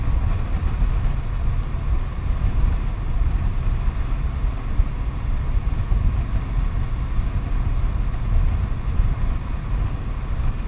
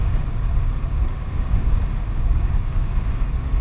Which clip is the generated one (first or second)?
second